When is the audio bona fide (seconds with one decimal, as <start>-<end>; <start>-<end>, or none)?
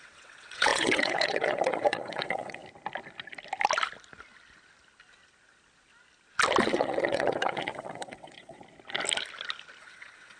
2.6-6.6; 8.6-9.8